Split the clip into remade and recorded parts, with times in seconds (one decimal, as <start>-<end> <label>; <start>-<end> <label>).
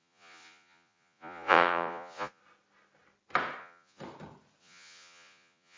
0.0-2.4 remade; 2.4-3.6 recorded; 3.6-4.0 remade; 4.0-4.6 recorded; 4.6-5.8 remade